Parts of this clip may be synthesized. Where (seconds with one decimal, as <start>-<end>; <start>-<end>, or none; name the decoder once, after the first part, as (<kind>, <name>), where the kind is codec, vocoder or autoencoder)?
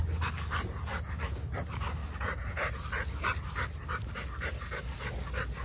none